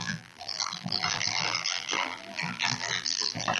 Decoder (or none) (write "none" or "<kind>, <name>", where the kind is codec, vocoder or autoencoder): vocoder, BigVGAN v2